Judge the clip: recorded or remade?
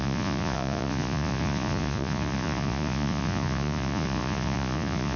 remade